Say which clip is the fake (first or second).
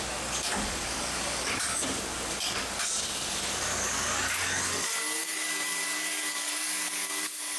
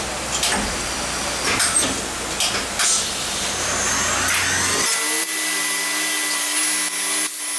first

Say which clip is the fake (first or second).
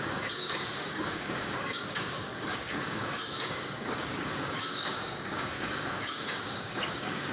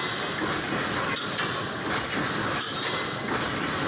first